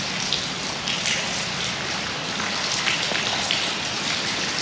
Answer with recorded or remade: remade